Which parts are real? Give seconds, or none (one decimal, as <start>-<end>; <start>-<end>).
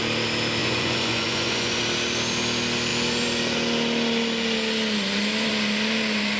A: 0.0-0.6; 1.8-6.4